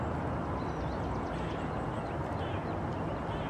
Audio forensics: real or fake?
real